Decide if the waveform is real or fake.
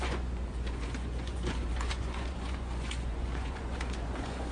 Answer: fake